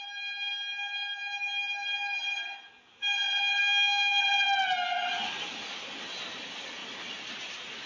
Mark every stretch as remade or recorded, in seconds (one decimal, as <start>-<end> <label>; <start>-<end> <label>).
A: 0.0-3.6 recorded; 3.6-4.2 remade; 4.2-7.9 recorded